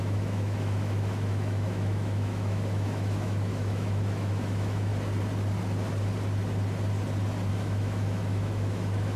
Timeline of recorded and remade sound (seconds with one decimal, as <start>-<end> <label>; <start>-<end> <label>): 0.0-4.9 remade; 4.9-7.5 recorded; 7.5-9.2 remade